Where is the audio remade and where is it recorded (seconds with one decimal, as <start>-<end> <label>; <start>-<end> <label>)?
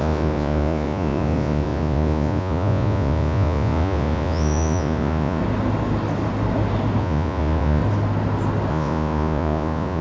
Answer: 0.0-5.4 remade; 5.4-7.0 recorded; 7.0-7.8 remade; 7.8-8.7 recorded; 8.7-10.0 remade